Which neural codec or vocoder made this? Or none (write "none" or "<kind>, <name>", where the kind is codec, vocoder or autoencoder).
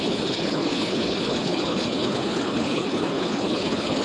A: codec, HILCodec